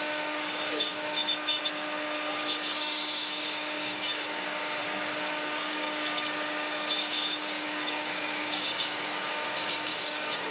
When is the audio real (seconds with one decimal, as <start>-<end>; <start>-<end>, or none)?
none